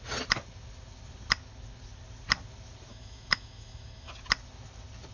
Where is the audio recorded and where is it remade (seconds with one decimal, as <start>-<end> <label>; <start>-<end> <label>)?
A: 0.0-2.9 recorded; 2.9-4.1 remade; 4.1-5.1 recorded